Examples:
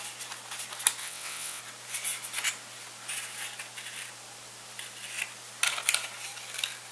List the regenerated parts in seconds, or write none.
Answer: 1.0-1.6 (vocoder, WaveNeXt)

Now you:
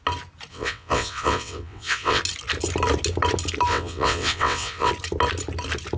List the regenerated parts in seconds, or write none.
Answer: 0.5-2.2 (vocoder, WaveNeXt); 3.7-4.9

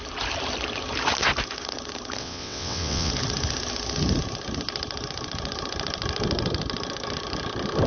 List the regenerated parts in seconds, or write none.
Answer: 2.2-3.1 (vocoder, WaveNeXt)

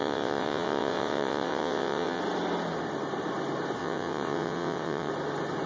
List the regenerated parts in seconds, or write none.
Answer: 0.0-2.2 (vocoder, WaveNeXt); 3.8-5.1